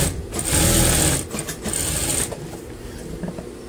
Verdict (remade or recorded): recorded